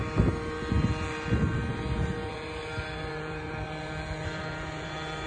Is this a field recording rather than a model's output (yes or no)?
no